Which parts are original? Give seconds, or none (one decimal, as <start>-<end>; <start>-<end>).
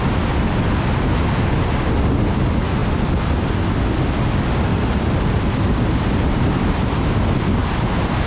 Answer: 0.0-4.7; 7.1-7.6